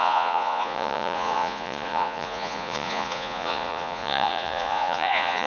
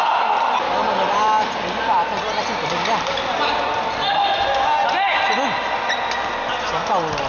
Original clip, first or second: second